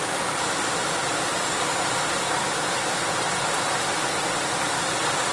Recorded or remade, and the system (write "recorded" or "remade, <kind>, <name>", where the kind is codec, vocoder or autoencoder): recorded